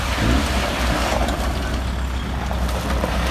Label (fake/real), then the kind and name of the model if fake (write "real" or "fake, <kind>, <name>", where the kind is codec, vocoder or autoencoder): real